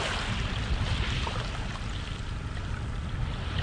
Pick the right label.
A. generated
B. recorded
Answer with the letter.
B